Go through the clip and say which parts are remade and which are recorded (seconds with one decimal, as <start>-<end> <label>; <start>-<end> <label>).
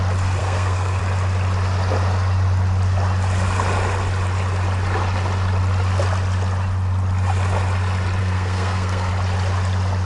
0.0-0.4 recorded; 0.4-1.0 remade; 1.0-8.2 recorded; 8.2-9.1 remade; 9.1-10.1 recorded